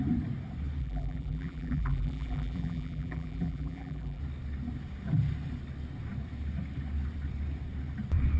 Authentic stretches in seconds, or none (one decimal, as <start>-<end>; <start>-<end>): 0.0-0.8; 4.2-8.4